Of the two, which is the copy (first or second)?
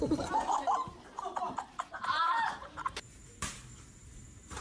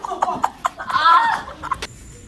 first